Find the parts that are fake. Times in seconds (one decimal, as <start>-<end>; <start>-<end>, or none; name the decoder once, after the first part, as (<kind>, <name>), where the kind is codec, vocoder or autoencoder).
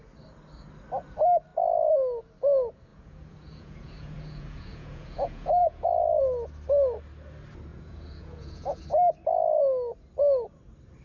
2.9-6.2 (vocoder, Vocos); 7.7-8.8